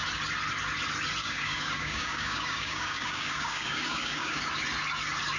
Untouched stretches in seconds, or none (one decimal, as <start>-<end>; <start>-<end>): 0.0-1.2; 4.4-5.4